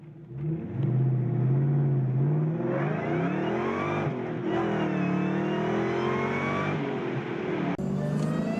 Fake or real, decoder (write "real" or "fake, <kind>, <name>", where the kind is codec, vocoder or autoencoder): real